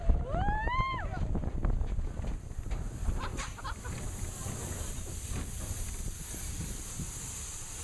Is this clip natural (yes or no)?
yes